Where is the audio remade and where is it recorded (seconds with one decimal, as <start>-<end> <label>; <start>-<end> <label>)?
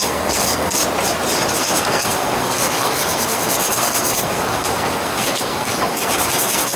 0.0-0.8 remade; 0.8-1.6 recorded; 1.6-6.8 remade